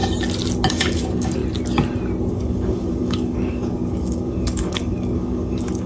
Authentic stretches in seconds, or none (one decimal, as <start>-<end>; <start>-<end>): 0.0-0.7; 1.4-2.3